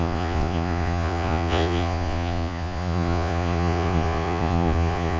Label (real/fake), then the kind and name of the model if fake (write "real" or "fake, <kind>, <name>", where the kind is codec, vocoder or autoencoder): fake, vocoder, Vocos